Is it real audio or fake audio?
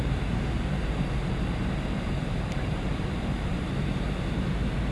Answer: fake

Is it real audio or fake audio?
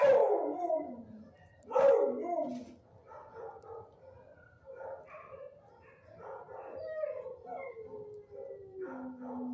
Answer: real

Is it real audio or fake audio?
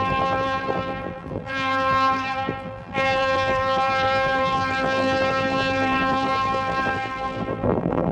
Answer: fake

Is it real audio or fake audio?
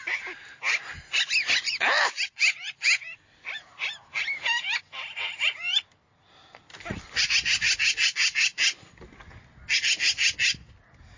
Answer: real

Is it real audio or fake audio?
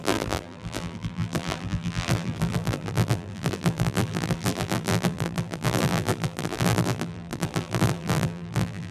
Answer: fake